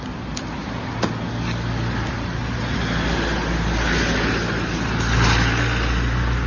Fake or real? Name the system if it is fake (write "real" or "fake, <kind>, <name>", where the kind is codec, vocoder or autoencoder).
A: real